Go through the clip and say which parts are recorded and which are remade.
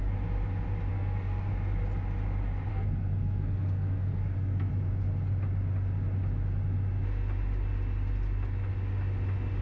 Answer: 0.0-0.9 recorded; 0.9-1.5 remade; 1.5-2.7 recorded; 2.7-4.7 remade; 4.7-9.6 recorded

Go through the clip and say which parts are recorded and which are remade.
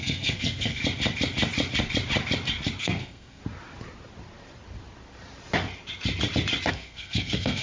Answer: 0.0-0.8 remade; 0.8-2.8 recorded; 2.8-3.4 remade; 3.4-6.7 recorded; 6.7-7.6 remade